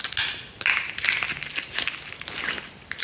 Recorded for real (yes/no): yes